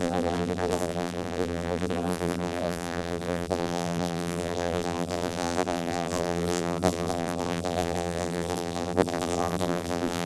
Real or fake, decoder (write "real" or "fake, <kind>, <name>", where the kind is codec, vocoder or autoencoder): fake, vocoder, BigVGAN v2